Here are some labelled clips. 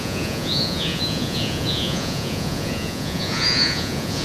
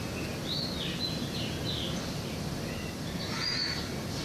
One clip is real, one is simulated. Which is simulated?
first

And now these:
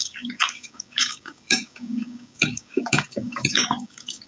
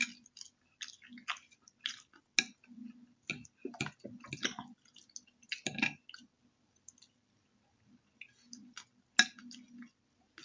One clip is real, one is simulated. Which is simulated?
first